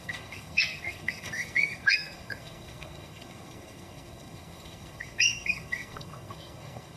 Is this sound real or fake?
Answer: fake